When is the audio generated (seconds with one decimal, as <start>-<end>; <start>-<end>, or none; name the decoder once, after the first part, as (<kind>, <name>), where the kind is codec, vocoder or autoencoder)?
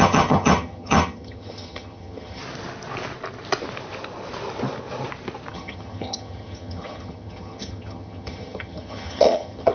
0.0-2.4 (vocoder, HiFi-GAN); 5.5-9.7